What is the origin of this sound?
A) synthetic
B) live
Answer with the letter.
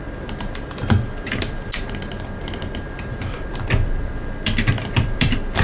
A